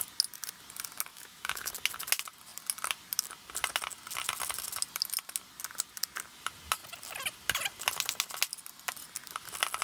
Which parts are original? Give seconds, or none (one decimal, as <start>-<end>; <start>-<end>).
0.0-1.1; 1.7-9.8